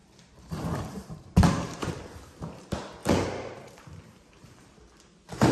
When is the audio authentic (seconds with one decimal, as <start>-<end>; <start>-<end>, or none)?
1.9-3.0; 4.7-5.5